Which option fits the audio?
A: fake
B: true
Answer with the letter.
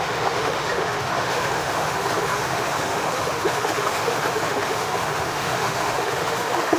A